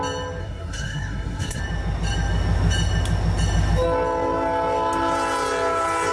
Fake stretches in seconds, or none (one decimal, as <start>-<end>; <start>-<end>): 0.4-1.6